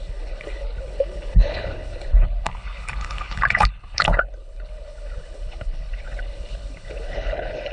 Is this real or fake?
fake